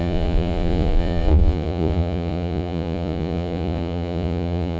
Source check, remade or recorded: remade